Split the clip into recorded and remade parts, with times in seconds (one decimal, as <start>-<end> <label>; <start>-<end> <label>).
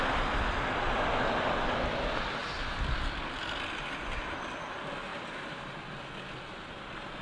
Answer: 0.0-7.2 recorded